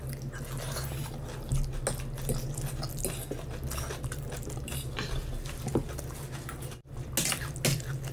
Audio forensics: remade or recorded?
recorded